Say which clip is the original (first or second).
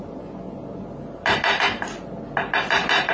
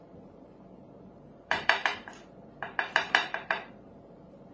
first